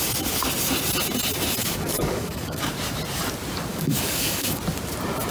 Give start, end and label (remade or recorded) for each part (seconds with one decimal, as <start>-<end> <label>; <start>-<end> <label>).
0.0-1.6 recorded; 1.6-2.7 remade; 2.7-3.7 recorded; 3.7-4.6 remade; 4.6-5.3 recorded